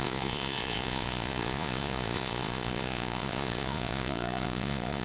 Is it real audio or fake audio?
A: fake